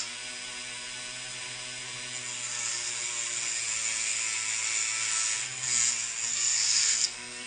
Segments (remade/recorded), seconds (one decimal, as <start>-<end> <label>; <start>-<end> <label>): 0.0-6.3 recorded; 6.3-7.5 remade